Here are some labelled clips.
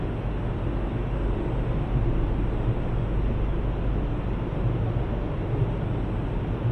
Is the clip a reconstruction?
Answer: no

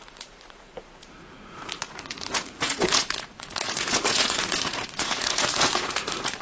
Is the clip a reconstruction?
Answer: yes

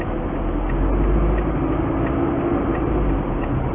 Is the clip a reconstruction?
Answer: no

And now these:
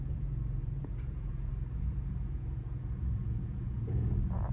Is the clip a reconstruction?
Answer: yes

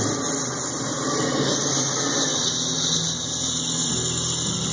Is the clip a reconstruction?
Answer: no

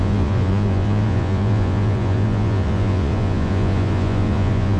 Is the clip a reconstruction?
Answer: yes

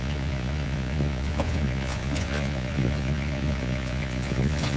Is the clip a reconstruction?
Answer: yes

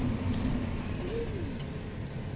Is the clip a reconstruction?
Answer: no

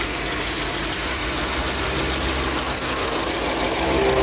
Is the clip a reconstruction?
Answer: no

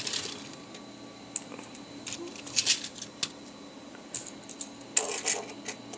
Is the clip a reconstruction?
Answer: no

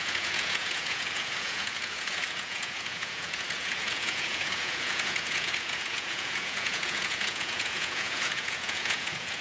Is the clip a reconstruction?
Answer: yes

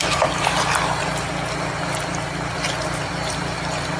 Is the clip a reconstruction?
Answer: no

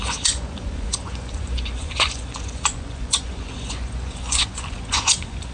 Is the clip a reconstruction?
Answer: yes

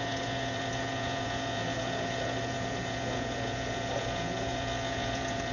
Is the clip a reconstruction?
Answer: yes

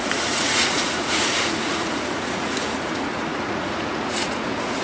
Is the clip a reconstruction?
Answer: yes